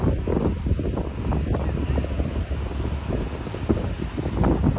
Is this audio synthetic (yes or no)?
no